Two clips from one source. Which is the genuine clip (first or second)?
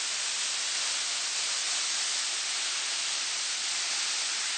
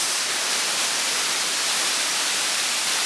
first